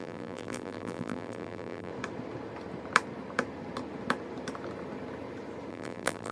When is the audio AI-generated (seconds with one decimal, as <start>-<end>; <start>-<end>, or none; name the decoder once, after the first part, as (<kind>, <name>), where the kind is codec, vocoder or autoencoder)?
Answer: 0.0-1.9 (vocoder, BigVGAN v2); 5.7-6.3